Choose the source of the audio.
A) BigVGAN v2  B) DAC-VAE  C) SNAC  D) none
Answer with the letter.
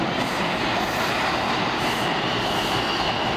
D